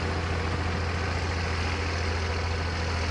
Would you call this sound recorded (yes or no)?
yes